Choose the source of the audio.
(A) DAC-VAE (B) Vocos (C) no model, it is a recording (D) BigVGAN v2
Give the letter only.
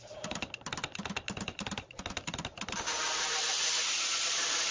C